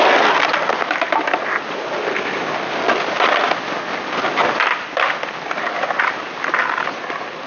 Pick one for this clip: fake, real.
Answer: real